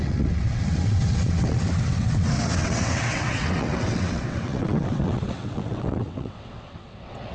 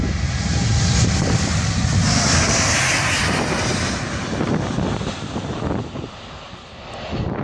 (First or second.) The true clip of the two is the second